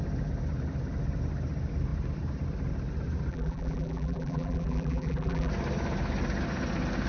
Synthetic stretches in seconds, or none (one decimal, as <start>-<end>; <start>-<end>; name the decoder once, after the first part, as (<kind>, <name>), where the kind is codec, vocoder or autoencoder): 3.3-5.5 (vocoder, BigVGAN v2)